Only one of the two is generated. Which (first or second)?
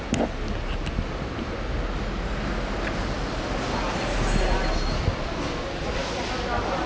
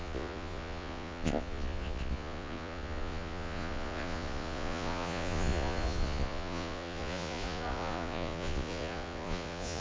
second